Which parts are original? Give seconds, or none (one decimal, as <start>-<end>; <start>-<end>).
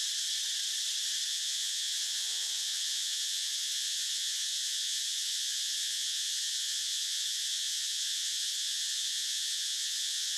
0.0-1.3